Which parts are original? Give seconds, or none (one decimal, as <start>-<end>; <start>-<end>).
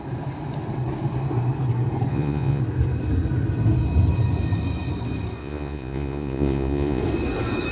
0.0-2.1; 2.6-5.4; 7.0-7.7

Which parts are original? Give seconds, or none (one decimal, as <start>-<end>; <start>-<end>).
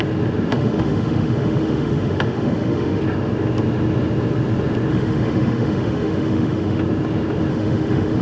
0.0-0.5; 3.0-4.9; 6.8-7.5